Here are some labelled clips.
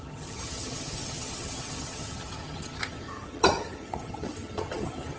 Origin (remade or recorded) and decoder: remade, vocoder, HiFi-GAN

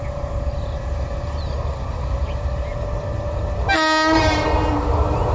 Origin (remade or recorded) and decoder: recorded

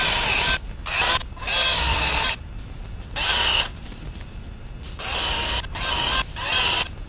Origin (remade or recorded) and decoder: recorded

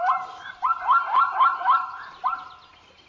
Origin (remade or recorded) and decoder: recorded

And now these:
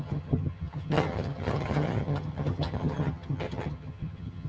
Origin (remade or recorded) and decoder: remade, vocoder, HiFi-GAN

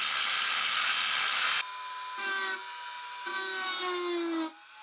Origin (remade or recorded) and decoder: recorded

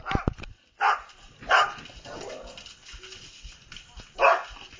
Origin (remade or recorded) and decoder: recorded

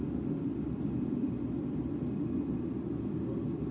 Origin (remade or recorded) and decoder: recorded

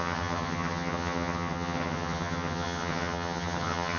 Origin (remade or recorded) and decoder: remade, vocoder, HiFi-GAN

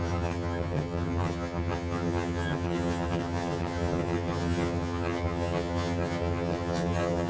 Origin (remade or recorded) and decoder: remade, vocoder, HiFi-GAN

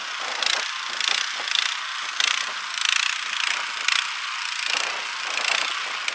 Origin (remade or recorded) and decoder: recorded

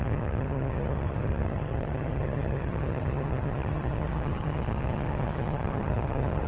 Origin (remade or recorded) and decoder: remade, vocoder, HiFi-GAN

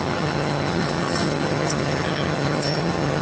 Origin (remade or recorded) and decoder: remade, vocoder, HiFi-GAN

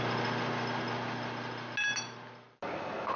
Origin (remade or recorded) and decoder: recorded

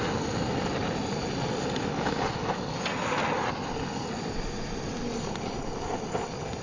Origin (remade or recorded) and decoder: recorded